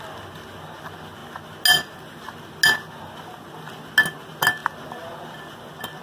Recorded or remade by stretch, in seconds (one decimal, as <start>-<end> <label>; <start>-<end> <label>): 0.0-6.0 recorded